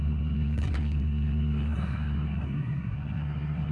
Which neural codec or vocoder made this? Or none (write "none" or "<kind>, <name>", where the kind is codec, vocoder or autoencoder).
codec, SNAC